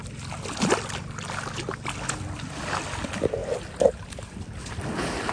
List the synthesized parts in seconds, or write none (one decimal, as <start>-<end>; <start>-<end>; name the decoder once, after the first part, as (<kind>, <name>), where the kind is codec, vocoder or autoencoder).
none

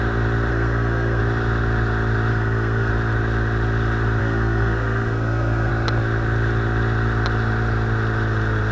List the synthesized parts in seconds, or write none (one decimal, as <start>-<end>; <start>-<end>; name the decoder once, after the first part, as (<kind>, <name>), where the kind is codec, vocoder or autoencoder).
0.5-1.2 (codec, SNAC); 2.3-2.9; 4.2-5.7

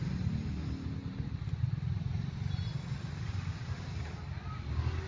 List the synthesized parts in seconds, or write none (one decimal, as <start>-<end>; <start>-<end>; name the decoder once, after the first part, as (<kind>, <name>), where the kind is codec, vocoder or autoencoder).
none

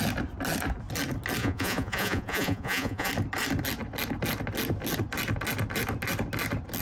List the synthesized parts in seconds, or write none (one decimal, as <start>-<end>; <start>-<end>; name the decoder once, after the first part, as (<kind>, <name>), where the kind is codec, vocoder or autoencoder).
1.4-3.1 (vocoder, Vocos)

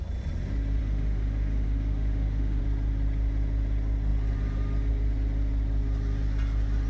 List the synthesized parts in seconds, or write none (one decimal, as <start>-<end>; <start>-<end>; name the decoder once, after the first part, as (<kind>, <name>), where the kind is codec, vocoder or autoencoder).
0.8-2.6 (autoencoder, DAC-VAE)

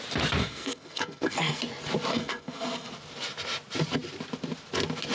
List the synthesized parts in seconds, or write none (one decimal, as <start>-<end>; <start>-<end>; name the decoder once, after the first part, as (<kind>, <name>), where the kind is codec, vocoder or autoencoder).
0.4-1.6 (codec, SNAC); 2.1-2.9

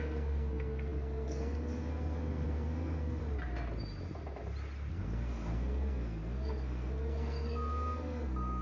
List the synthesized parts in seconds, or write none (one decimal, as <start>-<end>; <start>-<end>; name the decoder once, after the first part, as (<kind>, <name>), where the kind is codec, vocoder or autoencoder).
0.0-3.2 (codec, SNAC); 4.9-8.6